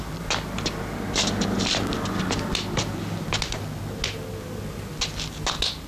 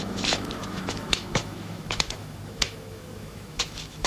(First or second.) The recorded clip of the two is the first